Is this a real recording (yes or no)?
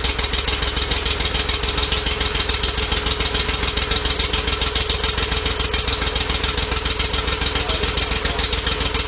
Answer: yes